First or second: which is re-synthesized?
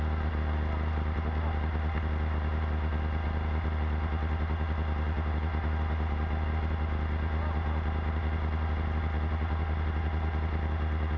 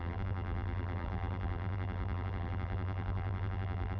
second